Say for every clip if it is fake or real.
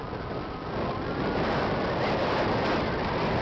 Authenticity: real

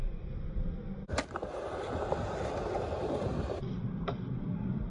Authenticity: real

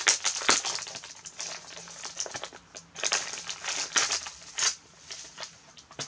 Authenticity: real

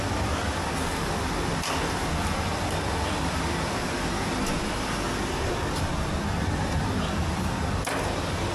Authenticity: real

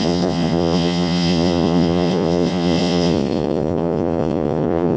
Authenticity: fake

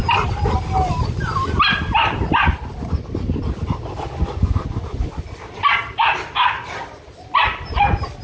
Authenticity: real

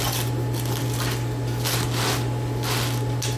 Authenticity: real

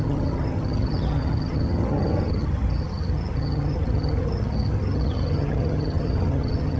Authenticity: fake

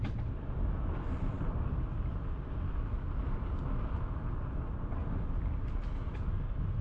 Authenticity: real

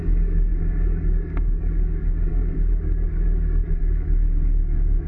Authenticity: fake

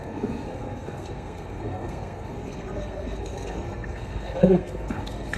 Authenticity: fake